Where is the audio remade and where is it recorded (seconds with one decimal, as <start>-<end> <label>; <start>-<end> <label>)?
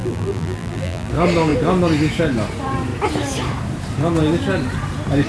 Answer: 0.0-1.1 remade; 1.1-5.3 recorded